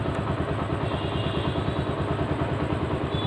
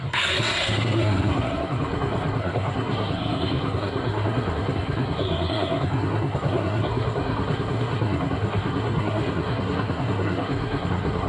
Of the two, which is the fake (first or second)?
second